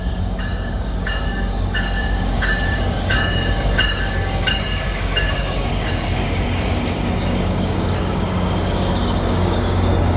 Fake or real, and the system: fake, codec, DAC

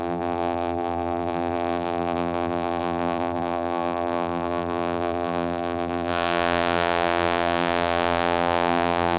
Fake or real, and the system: fake, vocoder, BigVGAN v2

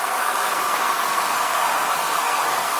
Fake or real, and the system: fake, codec, SNAC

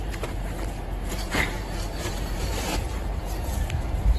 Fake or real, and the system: fake, vocoder, BigVGAN v2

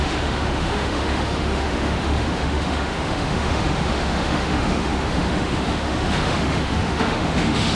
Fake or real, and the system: fake, autoencoder, DAC-VAE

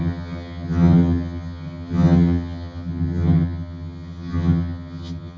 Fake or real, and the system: fake, vocoder, HiFi-GAN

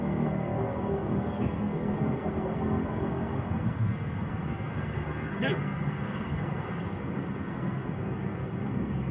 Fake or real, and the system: fake, codec, SNAC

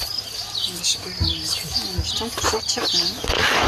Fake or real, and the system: real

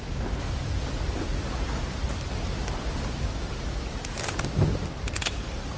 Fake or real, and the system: real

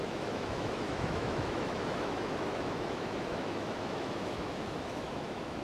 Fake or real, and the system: fake, autoencoder, DAC-VAE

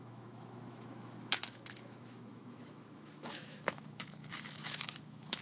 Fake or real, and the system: fake, autoencoder, DAC-VAE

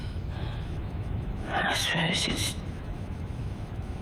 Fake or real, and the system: fake, autoencoder, DAC-VAE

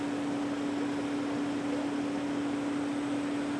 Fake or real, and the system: real